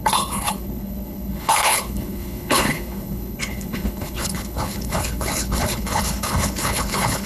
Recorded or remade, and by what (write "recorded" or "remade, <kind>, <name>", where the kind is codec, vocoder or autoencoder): remade, codec, HILCodec